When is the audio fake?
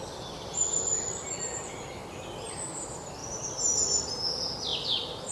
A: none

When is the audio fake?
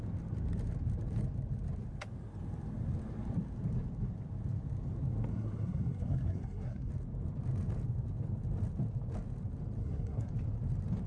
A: 5.3-6.9 (codec, SNAC); 9.8-10.3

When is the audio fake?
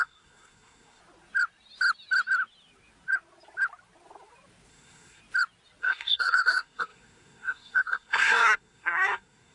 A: 0.0-1.0 (codec, SNAC); 4.7-5.2; 5.8-9.5